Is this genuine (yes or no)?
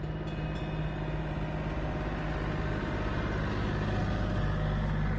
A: yes